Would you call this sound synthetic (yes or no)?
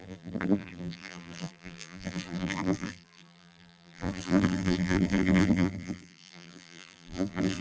yes